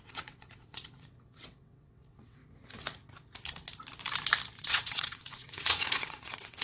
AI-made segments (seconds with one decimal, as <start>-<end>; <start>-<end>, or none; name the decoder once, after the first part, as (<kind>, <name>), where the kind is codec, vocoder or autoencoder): 0.0-2.4 (vocoder, WaveNeXt); 4.6-6.6